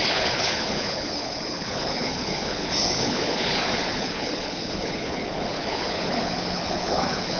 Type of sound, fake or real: fake